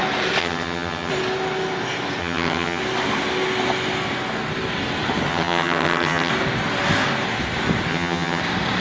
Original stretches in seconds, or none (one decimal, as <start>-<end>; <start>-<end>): 0.0-0.4; 1.1-2.2; 2.8-5.3; 6.3-7.9; 8.4-8.8